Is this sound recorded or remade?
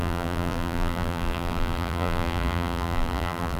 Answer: remade